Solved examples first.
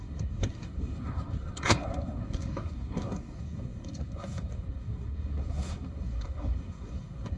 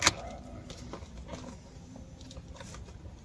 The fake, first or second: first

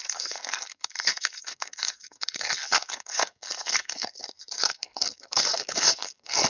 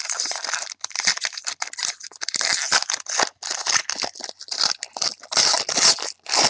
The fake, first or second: first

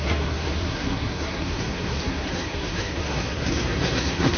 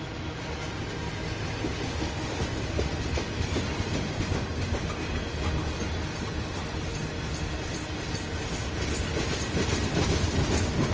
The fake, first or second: first